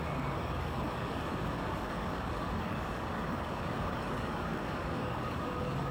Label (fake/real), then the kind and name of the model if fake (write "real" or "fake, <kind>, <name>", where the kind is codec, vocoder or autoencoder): fake, codec, DAC